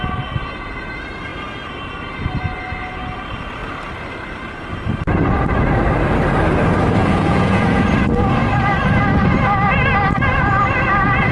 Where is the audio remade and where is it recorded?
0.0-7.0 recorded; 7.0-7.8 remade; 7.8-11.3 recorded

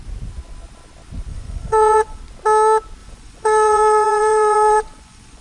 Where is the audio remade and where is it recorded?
0.0-1.3 recorded; 1.3-2.2 remade; 2.2-3.0 recorded; 3.0-5.4 remade